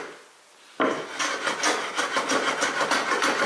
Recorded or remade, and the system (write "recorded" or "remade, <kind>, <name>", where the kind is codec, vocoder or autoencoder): recorded